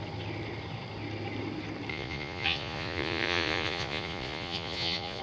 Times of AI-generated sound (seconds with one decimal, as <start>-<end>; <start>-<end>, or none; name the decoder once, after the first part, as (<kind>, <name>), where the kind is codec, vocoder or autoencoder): 1.9-5.2 (vocoder, Vocos)

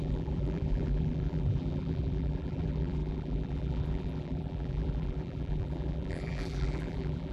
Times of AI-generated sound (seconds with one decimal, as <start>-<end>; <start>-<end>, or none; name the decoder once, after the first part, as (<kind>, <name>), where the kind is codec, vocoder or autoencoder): 0.0-7.3 (vocoder, BigVGAN v2)